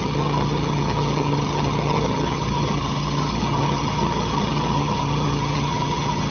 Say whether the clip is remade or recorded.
remade